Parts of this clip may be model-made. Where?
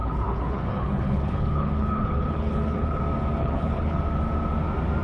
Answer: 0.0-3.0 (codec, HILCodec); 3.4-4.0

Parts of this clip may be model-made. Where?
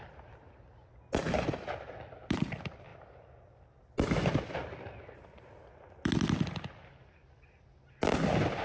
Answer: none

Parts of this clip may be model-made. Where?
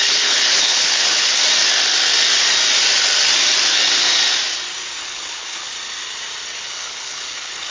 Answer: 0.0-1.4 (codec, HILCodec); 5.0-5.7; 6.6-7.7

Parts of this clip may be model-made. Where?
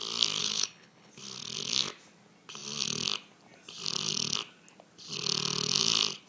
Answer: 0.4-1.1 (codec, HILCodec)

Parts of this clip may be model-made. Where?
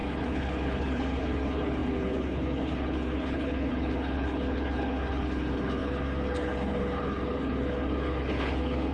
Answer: 0.0-8.9 (codec, HILCodec)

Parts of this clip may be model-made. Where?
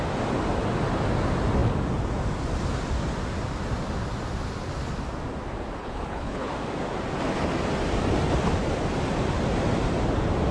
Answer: 5.8-6.5 (codec, HILCodec)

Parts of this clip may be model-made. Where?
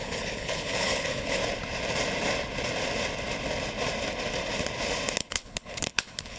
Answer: 0.0-1.4 (codec, HILCodec); 5.2-6.4